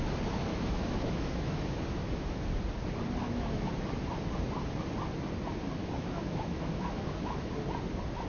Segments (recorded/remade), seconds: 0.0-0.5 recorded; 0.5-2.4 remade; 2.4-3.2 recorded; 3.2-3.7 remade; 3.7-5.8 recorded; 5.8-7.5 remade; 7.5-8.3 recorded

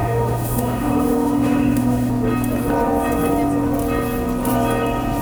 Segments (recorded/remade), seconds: 0.0-2.1 remade; 2.1-5.2 recorded

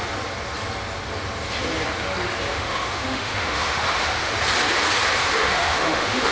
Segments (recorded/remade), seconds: 0.0-2.5 recorded; 2.5-4.3 remade; 4.3-5.2 recorded; 5.2-6.3 remade

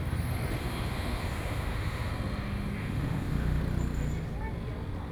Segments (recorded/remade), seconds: 0.0-0.6 recorded; 0.6-2.1 remade; 2.1-2.8 recorded; 2.8-3.6 remade; 3.6-5.1 recorded

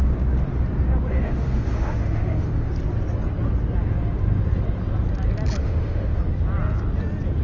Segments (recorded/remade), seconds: 0.0-1.1 recorded; 1.1-2.7 remade; 2.7-5.6 recorded; 5.6-6.2 remade; 6.2-7.4 recorded

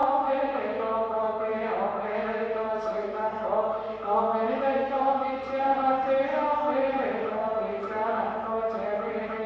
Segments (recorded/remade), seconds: 0.0-0.8 remade; 0.8-1.5 recorded; 1.5-3.6 remade; 3.6-4.8 recorded; 4.8-5.4 remade; 5.4-6.3 recorded; 6.3-9.5 remade